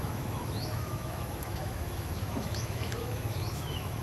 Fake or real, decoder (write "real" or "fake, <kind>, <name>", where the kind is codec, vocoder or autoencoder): fake, autoencoder, DAC-VAE